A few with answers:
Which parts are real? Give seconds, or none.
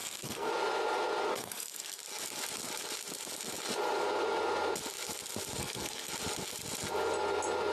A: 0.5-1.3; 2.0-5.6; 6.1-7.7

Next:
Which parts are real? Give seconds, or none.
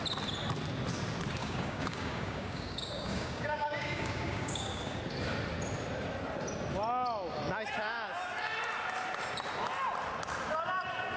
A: 0.0-1.4; 5.0-11.2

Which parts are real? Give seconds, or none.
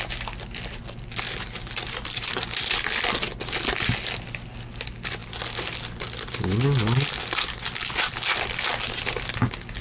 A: 0.0-9.8